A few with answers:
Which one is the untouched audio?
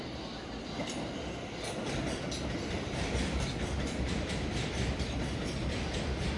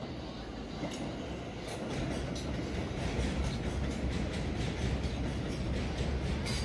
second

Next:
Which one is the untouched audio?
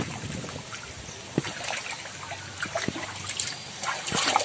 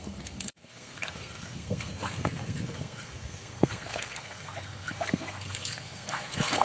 first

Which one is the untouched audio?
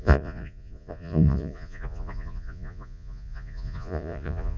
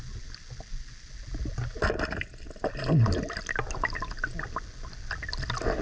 second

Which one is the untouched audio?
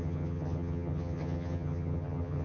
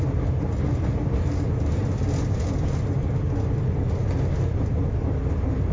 second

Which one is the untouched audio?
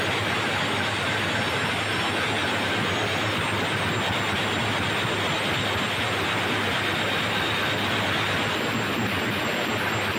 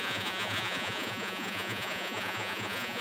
first